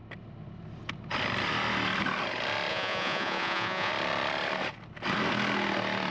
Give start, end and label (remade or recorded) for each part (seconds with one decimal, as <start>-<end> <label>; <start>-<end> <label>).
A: 0.0-2.7 recorded; 2.7-3.9 remade; 3.9-6.1 recorded